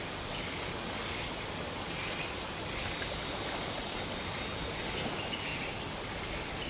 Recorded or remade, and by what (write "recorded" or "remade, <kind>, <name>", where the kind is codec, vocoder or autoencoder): recorded